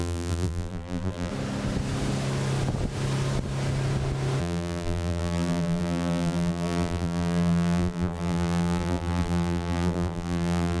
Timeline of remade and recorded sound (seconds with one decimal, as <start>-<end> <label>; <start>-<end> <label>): 0.0-1.3 remade; 1.3-4.4 recorded; 4.4-10.8 remade